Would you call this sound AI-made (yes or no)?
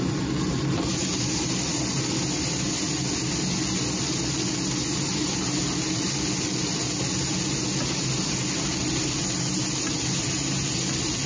no